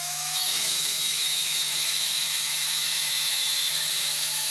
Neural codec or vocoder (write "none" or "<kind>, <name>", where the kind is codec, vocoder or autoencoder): autoencoder, DAC-VAE